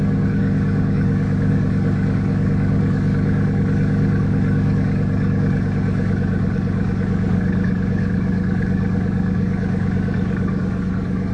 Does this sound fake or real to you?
fake